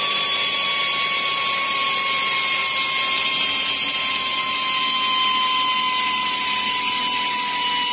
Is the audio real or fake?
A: real